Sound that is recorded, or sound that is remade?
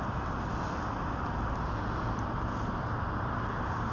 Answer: recorded